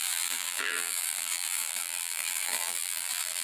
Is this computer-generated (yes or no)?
yes